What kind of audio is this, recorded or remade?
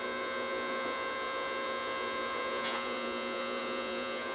remade